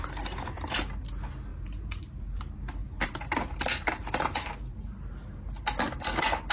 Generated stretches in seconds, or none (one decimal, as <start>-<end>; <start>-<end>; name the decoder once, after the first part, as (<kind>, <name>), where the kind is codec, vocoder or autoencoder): 1.5-5.4 (vocoder, BigVGAN v2)